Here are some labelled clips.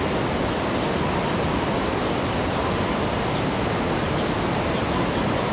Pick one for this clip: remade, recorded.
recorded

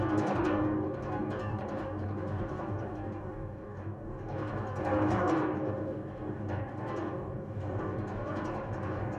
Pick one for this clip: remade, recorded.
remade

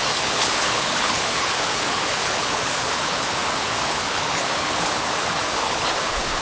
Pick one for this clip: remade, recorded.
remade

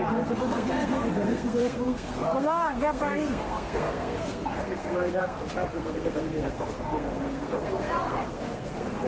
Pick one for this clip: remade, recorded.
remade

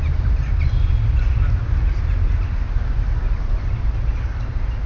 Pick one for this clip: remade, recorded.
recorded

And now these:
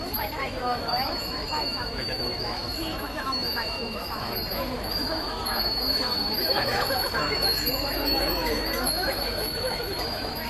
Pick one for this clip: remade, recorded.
remade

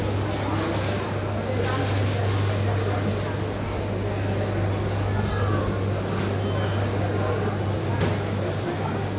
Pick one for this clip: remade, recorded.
recorded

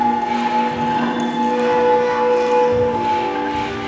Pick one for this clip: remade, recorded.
recorded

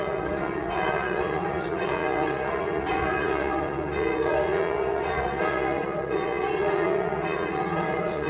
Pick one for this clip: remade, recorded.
remade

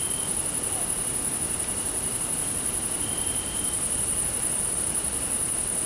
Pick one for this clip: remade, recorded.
recorded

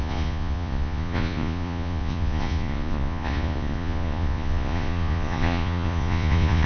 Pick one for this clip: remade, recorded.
remade